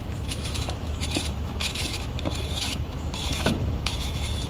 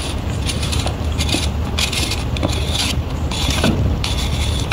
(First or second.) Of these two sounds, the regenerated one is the first